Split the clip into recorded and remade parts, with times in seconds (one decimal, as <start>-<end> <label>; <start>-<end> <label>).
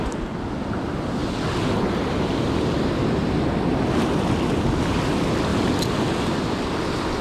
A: 0.0-7.2 recorded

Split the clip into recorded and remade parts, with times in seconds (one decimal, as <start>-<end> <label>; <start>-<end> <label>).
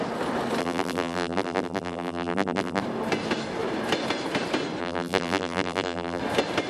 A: 0.0-0.6 recorded; 0.6-2.8 remade; 2.8-4.8 recorded; 4.8-6.2 remade; 6.2-6.7 recorded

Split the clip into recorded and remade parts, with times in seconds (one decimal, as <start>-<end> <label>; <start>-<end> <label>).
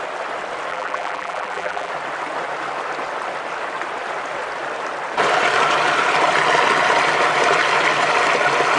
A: 0.0-0.7 recorded; 0.7-1.9 remade; 1.9-8.8 recorded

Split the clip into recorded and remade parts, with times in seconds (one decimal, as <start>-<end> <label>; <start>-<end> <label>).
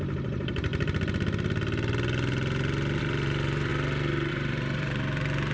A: 0.0-0.7 remade; 0.7-3.0 recorded; 3.0-3.7 remade; 3.7-4.3 recorded; 4.3-5.5 remade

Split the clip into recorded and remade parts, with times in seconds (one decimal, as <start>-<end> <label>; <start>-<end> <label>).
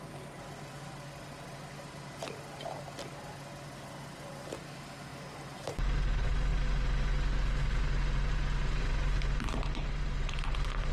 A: 0.0-5.1 recorded; 5.1-6.1 remade; 6.1-6.5 recorded; 6.5-7.1 remade; 7.1-7.6 recorded; 7.6-10.9 remade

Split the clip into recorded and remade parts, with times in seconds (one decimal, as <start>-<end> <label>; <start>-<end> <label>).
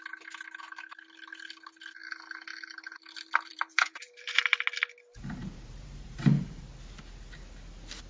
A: 0.0-3.5 recorded; 3.5-4.6 remade; 4.6-5.4 recorded; 5.4-6.6 remade; 6.6-8.1 recorded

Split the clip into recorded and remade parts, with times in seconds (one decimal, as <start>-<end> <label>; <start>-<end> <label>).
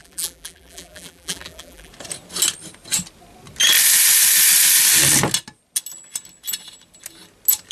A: 0.0-1.9 remade; 1.9-7.7 recorded